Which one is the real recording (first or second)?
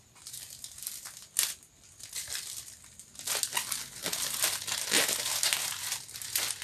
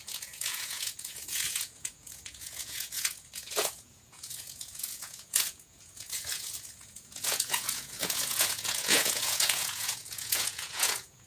first